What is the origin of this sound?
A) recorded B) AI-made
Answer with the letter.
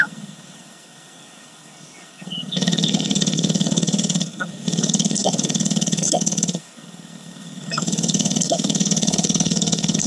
B